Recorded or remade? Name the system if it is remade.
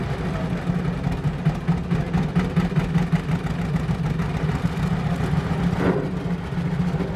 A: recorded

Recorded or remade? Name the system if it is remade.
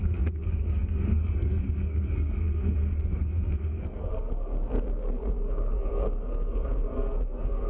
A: remade, codec, SNAC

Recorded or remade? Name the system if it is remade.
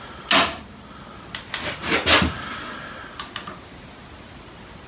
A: recorded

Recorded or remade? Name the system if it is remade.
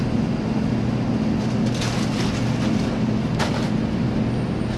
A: recorded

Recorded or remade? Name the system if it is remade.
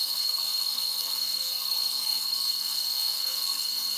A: remade, codec, SNAC